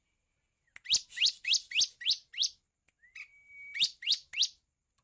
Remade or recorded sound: recorded